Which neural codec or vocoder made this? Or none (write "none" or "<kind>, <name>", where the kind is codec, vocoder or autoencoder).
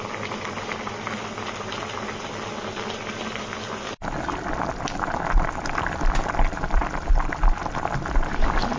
none